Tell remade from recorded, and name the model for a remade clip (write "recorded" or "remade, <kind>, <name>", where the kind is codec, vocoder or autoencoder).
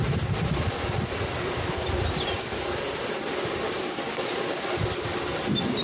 recorded